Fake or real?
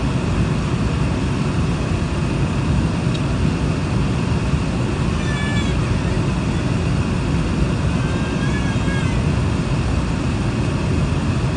real